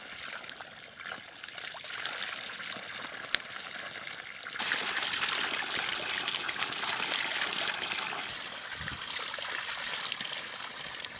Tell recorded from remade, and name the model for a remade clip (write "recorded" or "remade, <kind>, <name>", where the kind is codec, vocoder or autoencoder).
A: recorded